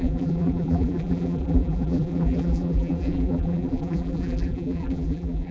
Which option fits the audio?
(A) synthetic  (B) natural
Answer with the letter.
A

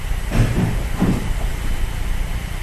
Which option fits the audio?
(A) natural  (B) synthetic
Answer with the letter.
B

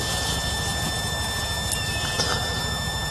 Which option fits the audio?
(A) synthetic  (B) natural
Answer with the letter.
B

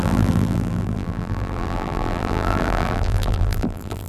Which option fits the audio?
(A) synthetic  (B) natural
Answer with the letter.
A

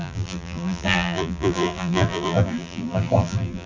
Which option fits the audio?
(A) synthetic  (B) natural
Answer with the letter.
A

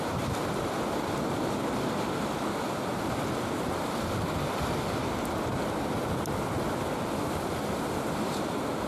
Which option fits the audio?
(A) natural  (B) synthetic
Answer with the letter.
A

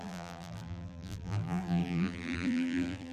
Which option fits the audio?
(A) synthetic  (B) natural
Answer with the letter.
A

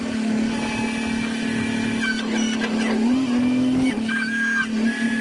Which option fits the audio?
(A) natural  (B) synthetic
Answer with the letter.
A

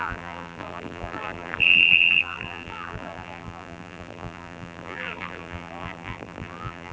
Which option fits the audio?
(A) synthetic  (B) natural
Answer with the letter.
A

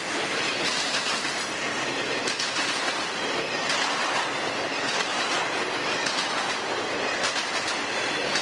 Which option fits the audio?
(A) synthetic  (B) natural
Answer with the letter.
B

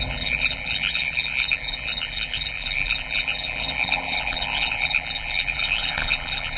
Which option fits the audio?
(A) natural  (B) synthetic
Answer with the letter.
B